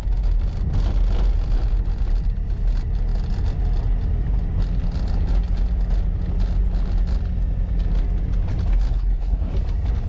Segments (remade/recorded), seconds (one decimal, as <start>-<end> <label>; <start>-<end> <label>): 0.0-8.9 recorded; 8.9-9.5 remade; 9.5-10.1 recorded

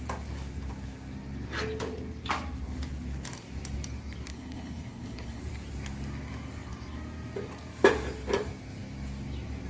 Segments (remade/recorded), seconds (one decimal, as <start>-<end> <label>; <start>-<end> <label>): 0.0-4.3 recorded; 4.3-5.4 remade; 5.4-9.7 recorded

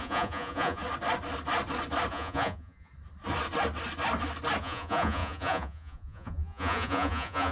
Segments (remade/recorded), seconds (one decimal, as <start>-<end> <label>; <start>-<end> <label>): 0.0-0.8 remade; 0.8-2.1 recorded; 2.1-2.9 remade; 2.9-4.6 recorded; 4.6-7.5 remade

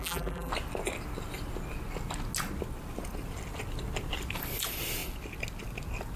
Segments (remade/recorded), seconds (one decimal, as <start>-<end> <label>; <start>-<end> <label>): 0.0-0.5 remade; 0.5-6.2 recorded